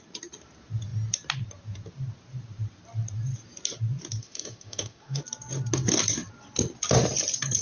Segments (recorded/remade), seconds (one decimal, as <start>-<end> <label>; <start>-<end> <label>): 0.0-4.2 recorded; 4.2-5.2 remade; 5.2-7.6 recorded